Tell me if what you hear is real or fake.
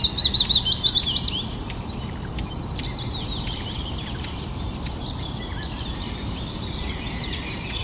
fake